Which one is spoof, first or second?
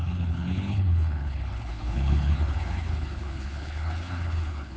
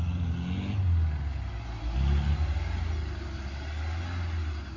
first